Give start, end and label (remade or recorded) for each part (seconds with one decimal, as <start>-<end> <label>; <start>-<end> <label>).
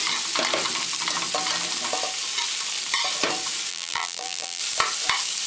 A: 0.0-3.7 recorded; 3.7-4.6 remade; 4.6-5.5 recorded